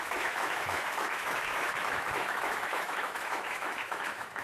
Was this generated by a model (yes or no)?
yes